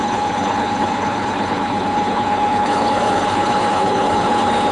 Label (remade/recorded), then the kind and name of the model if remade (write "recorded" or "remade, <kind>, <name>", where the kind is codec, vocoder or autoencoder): remade, codec, HILCodec